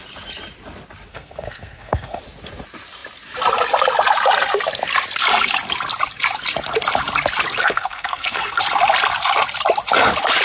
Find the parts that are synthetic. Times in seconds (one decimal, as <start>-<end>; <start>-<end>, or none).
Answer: 1.1-2.2; 7.6-8.6